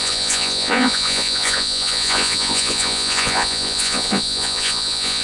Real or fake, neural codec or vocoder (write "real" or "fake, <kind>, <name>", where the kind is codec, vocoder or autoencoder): fake, vocoder, Vocos